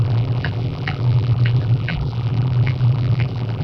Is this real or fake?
fake